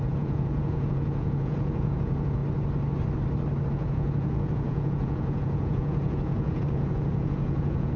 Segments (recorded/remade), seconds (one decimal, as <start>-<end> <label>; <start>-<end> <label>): 0.0-2.4 remade; 2.4-3.7 recorded; 3.7-8.0 remade